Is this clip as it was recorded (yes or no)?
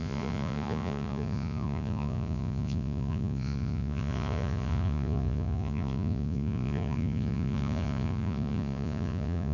no